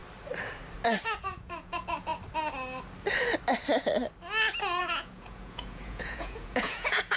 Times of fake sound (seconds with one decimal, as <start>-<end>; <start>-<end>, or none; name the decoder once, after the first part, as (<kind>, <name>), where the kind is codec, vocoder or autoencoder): 1.2-2.1 (vocoder, Vocos); 4.8-7.2